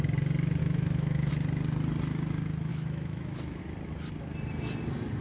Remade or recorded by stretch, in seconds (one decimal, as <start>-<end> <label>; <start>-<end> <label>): 0.0-0.6 recorded; 0.6-1.3 remade; 1.3-2.7 recorded; 2.7-3.6 remade; 3.6-5.2 recorded